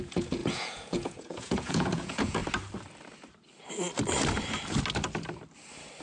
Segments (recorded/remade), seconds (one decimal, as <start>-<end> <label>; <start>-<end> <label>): 0.0-2.4 remade; 2.4-6.0 recorded